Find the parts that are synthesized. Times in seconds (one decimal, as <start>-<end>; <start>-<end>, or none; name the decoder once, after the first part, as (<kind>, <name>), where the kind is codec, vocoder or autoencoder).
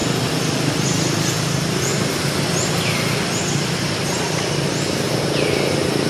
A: none